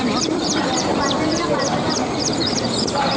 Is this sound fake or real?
fake